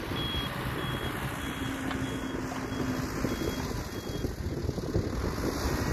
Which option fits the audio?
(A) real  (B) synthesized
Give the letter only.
A